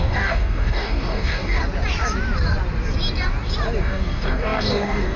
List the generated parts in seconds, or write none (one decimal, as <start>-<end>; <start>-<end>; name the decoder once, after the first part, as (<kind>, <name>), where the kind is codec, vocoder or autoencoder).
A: 0.0-1.6 (codec, DAC); 3.8-5.2